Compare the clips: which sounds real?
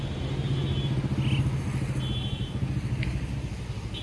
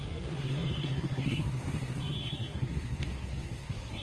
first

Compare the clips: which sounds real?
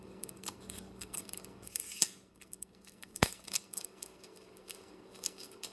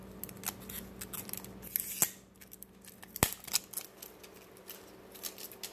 second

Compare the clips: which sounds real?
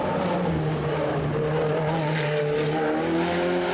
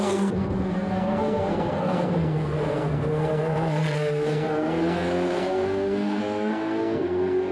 first